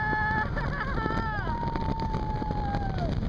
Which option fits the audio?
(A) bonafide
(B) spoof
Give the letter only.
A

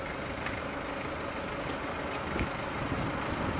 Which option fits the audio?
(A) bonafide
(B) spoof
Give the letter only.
A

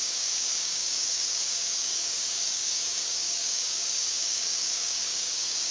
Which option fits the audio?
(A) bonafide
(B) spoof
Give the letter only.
B